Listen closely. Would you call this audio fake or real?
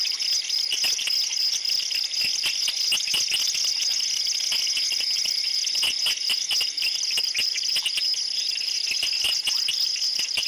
real